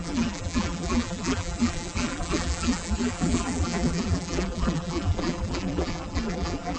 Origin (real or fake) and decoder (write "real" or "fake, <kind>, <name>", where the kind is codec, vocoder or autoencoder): fake, vocoder, BigVGAN v2